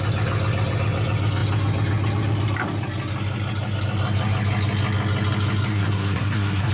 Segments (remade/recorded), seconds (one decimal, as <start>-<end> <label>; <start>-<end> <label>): 0.0-5.7 recorded; 5.7-6.7 remade